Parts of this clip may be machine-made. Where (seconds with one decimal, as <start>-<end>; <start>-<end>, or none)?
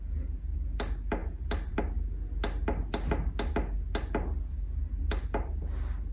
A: 1.2-1.8